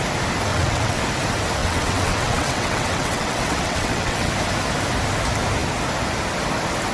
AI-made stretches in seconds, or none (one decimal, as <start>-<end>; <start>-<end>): 0.5-1.0; 1.6-4.3